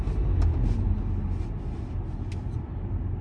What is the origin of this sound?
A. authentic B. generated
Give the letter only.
A